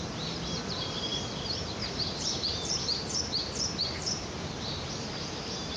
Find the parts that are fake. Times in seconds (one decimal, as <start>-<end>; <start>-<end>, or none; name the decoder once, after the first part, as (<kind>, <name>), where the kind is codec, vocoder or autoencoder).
0.0-5.8 (vocoder, BigVGAN v2)